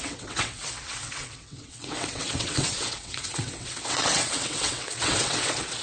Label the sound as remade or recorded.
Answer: remade